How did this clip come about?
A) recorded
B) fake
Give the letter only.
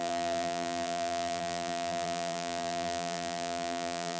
B